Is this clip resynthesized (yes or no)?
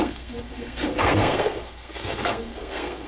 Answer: yes